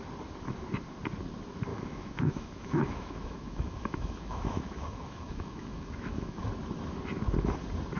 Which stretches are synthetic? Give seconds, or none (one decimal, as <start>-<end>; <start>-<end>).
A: 1.7-6.5